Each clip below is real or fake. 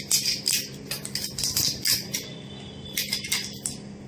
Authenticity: real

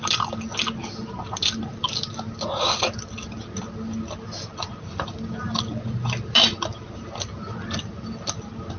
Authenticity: real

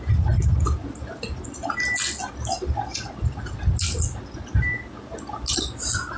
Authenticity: real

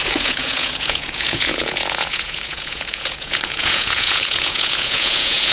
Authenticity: fake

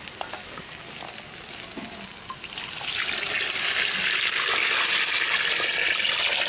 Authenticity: real